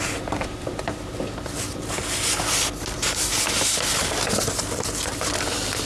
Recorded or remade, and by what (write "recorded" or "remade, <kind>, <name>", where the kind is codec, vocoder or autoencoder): recorded